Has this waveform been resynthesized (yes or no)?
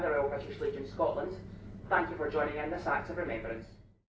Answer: no